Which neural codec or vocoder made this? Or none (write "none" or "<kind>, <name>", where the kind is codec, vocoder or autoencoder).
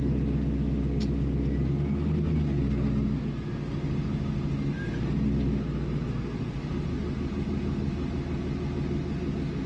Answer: none